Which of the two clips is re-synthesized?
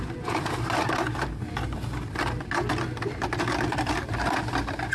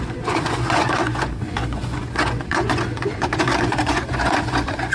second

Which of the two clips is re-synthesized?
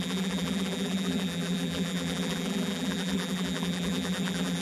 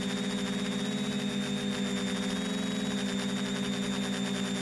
first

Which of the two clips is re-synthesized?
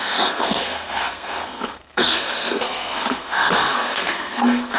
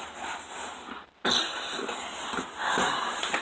first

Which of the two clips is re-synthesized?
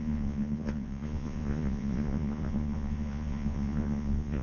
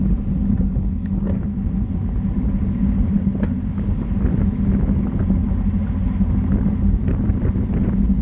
first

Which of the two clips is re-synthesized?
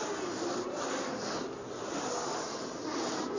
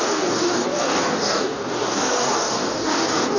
second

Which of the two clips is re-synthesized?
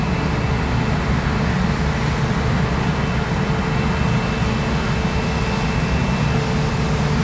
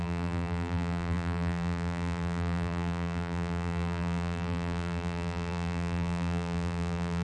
second